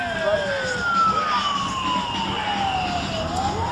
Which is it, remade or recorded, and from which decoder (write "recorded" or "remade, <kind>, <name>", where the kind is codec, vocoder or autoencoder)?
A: recorded